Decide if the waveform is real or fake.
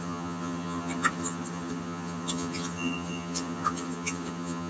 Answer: fake